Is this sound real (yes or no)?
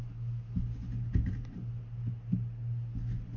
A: yes